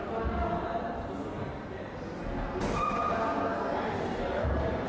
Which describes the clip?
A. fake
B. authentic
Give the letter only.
B